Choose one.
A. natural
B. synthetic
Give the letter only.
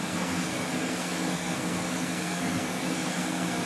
B